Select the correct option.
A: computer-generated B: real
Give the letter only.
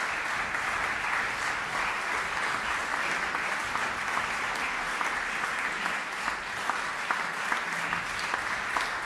B